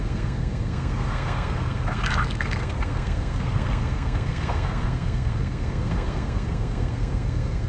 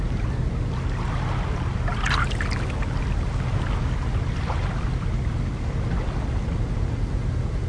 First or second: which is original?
second